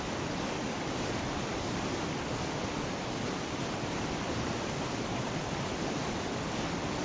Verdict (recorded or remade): remade